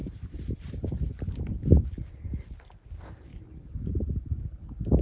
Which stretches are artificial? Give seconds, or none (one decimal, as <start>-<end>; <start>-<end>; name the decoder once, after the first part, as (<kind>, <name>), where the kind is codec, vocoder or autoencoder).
0.0-1.4 (vocoder, BigVGAN v2); 3.3-4.4